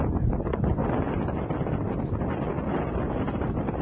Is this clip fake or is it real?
real